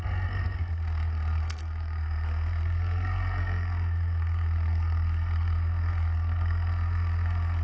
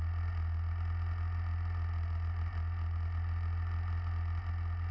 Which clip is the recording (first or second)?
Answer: second